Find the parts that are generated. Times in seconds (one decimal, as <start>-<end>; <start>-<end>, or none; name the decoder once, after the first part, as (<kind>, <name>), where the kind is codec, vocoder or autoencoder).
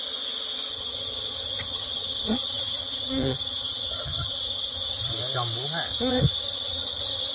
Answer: 0.7-5.1 (vocoder, HiFi-GAN); 5.9-7.3